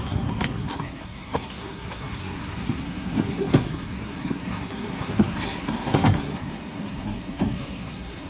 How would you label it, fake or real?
fake